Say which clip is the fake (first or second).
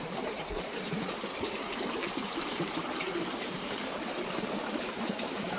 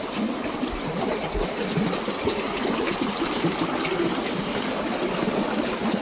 first